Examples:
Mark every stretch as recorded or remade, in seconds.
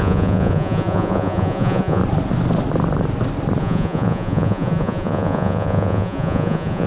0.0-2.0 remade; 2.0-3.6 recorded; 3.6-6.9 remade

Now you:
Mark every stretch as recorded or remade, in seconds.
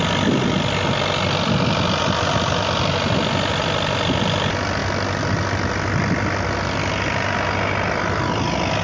0.0-8.8 recorded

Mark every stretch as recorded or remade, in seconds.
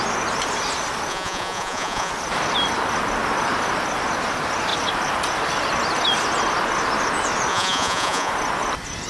0.0-1.1 recorded; 1.1-2.1 remade; 2.1-7.5 recorded; 7.5-8.3 remade; 8.3-9.1 recorded